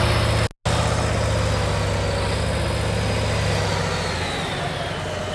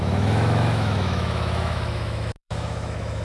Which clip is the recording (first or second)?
first